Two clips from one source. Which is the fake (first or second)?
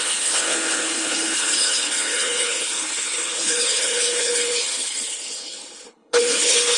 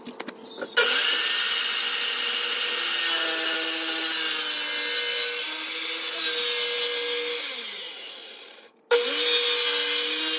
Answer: first